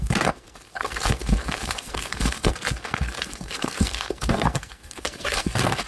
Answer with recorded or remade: remade